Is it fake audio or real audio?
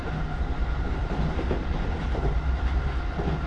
real